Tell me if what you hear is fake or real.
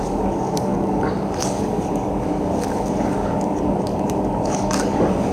fake